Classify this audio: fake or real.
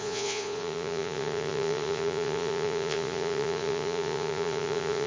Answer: fake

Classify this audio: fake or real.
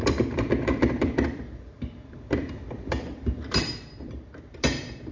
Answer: fake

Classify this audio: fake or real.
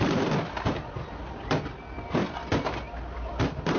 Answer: real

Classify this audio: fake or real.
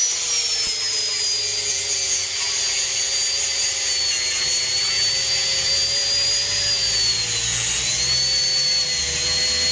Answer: real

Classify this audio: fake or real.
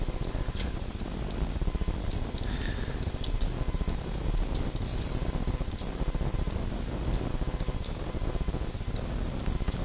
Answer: real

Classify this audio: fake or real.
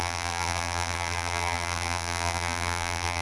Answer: fake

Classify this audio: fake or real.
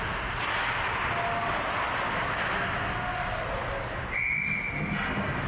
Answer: real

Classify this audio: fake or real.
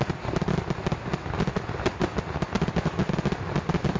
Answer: real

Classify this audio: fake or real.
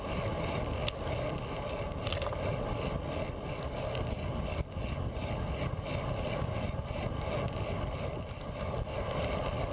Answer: real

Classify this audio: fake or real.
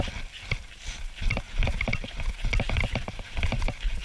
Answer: real